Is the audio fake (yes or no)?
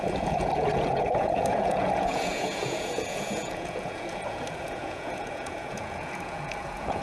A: yes